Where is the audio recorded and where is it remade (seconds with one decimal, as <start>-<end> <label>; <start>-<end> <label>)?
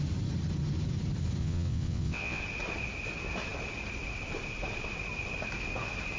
0.0-1.4 recorded; 1.4-2.4 remade; 2.4-6.2 recorded